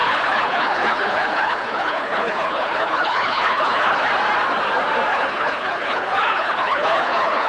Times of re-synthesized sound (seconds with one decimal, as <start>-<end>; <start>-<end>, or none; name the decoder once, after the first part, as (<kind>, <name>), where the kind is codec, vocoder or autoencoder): 0.0-4.0 (codec, HILCodec); 5.1-7.5